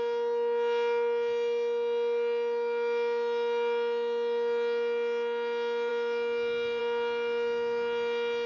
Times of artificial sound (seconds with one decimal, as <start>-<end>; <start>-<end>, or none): none